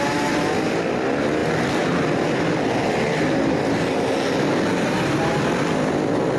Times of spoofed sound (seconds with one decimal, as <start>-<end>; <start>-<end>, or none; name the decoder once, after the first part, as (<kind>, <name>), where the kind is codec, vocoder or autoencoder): none